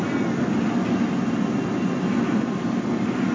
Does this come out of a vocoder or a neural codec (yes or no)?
no